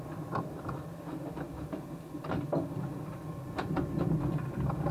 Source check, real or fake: real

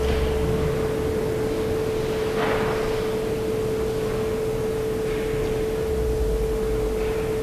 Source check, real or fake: real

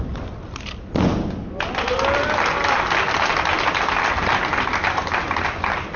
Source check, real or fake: real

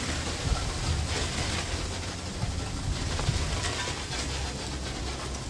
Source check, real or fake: real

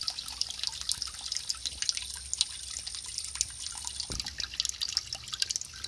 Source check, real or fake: real